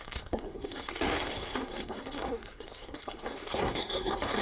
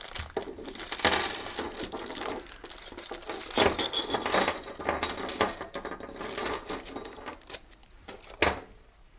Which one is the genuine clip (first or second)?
second